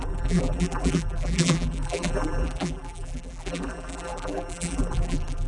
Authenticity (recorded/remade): remade